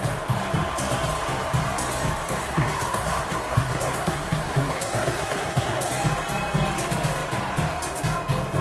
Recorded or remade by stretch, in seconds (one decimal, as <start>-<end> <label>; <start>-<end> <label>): 0.0-2.4 recorded; 2.4-5.9 remade; 5.9-8.6 recorded